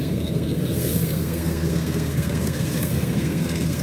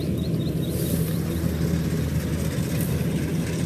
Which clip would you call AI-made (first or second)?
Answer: first